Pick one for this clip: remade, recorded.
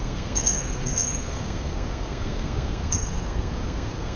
remade